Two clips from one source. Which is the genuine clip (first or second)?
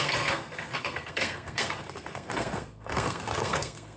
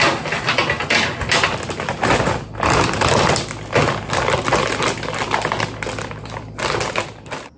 second